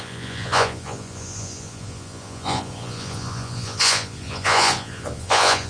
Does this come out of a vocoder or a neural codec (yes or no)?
yes